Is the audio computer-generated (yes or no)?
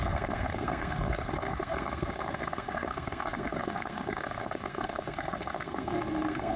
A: yes